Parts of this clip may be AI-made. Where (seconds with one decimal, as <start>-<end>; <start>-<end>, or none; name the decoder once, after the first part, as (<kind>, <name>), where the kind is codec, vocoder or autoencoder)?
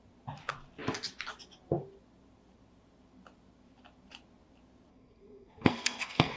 4.9-6.4 (codec, SNAC)